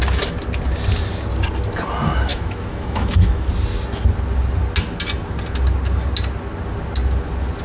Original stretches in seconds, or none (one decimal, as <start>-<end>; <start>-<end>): 0.0-2.3; 3.5-7.6